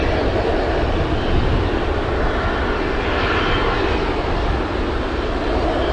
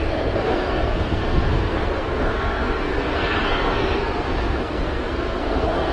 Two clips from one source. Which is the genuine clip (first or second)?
first